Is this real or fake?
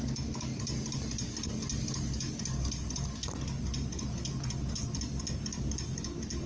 real